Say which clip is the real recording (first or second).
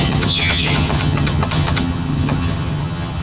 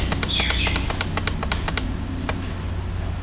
second